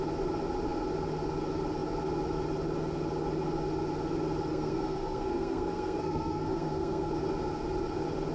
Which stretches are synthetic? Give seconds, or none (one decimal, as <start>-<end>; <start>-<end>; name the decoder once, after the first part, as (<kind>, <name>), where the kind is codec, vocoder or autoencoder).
4.5-7.1 (codec, SNAC)